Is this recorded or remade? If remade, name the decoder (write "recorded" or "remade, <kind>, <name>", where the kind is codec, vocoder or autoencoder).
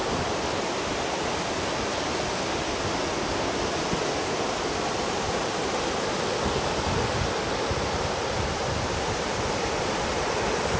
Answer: recorded